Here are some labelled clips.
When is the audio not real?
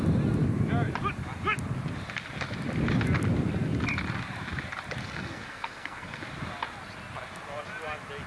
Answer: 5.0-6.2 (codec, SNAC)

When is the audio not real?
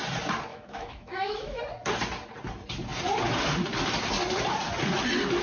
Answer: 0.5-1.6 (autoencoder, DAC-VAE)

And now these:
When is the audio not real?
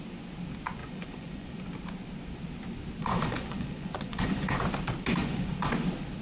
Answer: 0.8-1.6 (vocoder, Vocos); 3.0-4.6; 5.2-5.7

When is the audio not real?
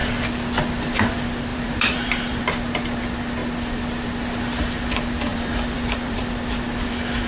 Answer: 1.5-2.4 (vocoder, BigVGAN v2); 5.3-6.2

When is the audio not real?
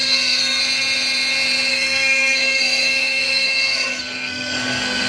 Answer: 0.0-0.6 (codec, SNAC); 1.7-5.1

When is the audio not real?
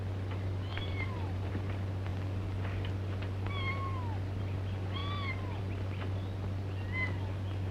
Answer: 0.7-1.5 (vocoder, BigVGAN v2)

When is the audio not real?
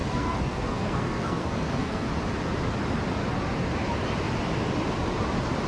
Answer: 0.0-2.1 (codec, SNAC)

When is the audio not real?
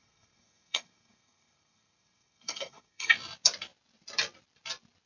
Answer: 0.0-3.1 (codec, SNAC)